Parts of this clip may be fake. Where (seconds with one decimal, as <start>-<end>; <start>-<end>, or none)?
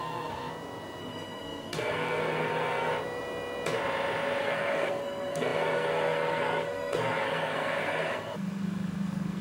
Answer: 0.0-0.4; 1.0-2.9; 4.4-9.4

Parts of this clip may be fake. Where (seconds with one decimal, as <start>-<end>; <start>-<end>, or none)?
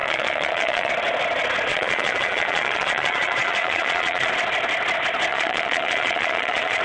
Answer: 0.0-0.9; 1.7-4.3; 5.3-6.8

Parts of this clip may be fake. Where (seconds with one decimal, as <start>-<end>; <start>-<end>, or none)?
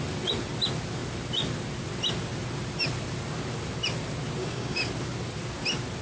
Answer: 4.4-4.9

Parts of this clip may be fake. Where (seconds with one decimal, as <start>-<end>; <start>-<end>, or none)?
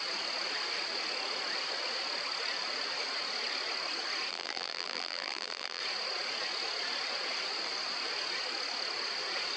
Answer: 4.3-5.8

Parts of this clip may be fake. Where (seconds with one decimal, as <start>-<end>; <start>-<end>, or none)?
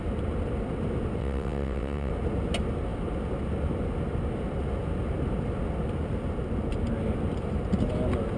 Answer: 1.2-2.1